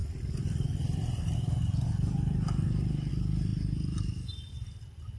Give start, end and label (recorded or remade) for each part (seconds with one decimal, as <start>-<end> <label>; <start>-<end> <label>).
0.0-3.1 remade; 3.1-5.2 recorded